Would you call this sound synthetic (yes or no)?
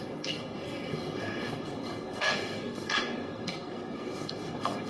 yes